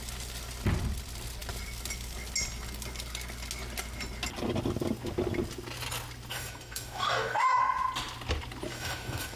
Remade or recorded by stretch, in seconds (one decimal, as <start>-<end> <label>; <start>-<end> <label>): 0.0-6.3 recorded; 6.3-7.6 remade; 7.6-8.7 recorded; 8.7-9.4 remade